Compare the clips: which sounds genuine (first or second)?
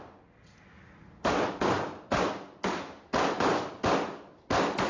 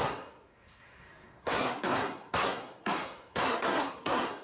first